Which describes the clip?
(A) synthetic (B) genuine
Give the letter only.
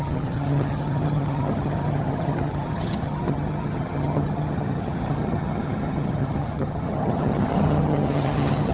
A